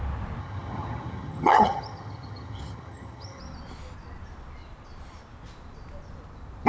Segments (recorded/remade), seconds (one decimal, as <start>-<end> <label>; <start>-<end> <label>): 0.0-0.4 recorded; 0.4-3.4 remade; 3.4-6.7 recorded